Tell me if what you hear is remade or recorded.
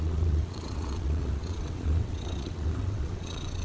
remade